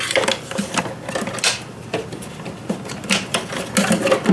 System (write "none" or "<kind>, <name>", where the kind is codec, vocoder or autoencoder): none